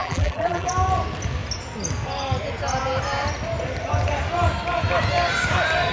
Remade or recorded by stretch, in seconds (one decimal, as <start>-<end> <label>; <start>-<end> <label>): 0.0-0.7 remade; 0.7-5.9 recorded